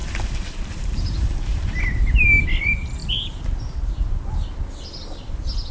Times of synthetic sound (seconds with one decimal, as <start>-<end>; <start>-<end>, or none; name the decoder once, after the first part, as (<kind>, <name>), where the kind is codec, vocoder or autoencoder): 0.0-1.8 (vocoder, BigVGAN v2)